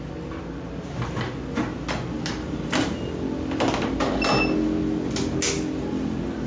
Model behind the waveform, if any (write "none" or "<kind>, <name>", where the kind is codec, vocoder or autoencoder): none